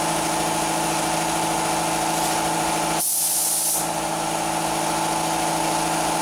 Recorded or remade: recorded